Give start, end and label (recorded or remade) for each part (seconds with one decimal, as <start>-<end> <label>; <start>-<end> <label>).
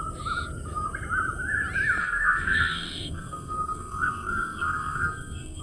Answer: 0.0-2.0 recorded; 2.0-5.6 remade